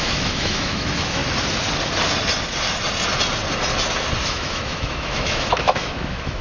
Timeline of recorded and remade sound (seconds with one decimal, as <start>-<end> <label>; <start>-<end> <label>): 0.0-1.2 remade; 1.2-4.2 recorded; 4.2-6.4 remade